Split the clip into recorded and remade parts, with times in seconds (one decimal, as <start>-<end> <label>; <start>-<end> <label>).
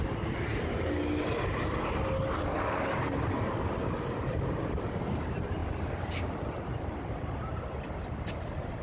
0.0-8.8 recorded